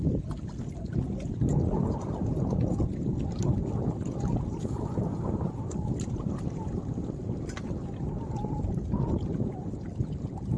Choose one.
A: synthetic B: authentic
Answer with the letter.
B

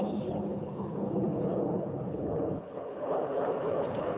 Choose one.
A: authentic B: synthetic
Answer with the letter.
B